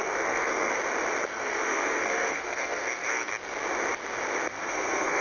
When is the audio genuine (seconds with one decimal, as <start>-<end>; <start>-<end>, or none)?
0.7-1.3; 3.3-4.5